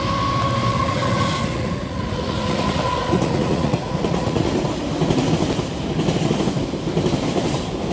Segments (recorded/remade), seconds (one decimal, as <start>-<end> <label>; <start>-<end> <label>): 0.0-0.7 recorded; 0.7-4.5 remade; 4.5-7.9 recorded